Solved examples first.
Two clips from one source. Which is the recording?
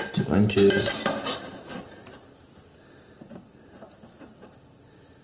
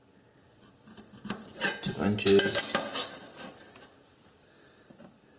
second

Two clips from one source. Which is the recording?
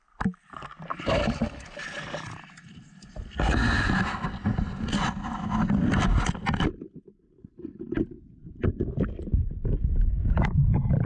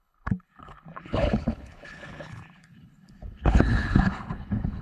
first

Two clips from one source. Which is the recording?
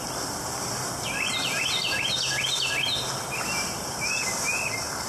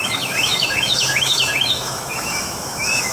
first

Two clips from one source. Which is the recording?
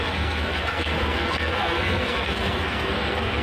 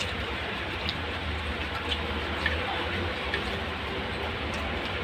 second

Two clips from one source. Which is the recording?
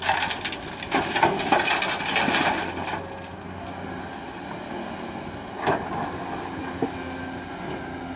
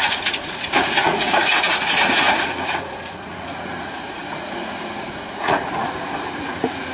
first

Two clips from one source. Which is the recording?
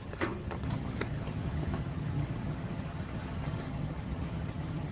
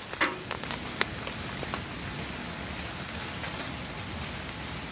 second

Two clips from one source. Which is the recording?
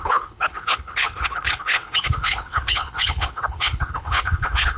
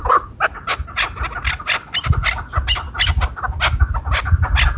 second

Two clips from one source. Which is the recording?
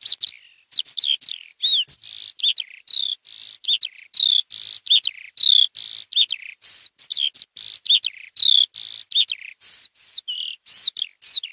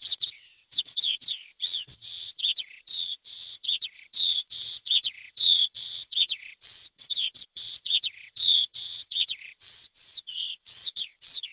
first